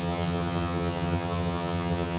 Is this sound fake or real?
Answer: fake